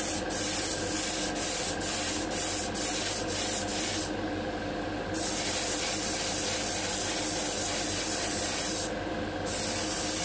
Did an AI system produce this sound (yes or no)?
no